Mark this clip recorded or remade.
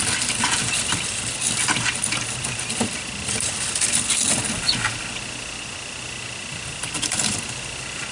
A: recorded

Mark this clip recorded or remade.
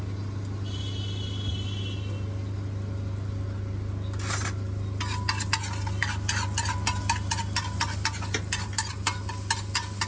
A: recorded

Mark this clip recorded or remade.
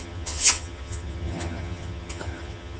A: remade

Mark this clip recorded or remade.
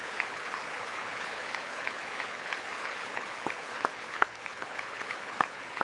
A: remade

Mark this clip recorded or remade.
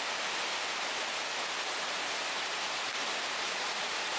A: recorded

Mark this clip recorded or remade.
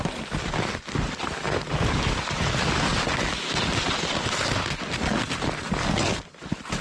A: recorded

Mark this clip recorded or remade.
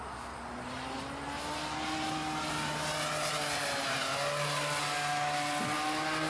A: recorded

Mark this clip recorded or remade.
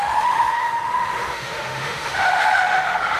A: remade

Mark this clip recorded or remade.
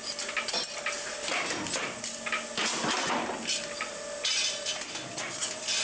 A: recorded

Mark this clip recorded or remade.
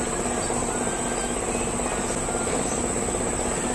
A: recorded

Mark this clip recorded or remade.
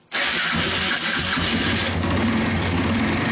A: recorded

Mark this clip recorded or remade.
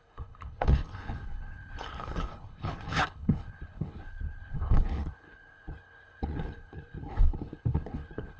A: remade